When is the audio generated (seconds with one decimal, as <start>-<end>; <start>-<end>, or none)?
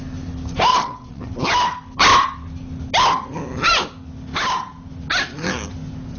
0.7-1.3